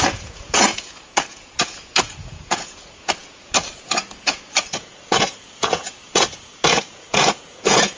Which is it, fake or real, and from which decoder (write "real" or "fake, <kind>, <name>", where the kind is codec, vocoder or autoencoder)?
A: fake, vocoder, Vocos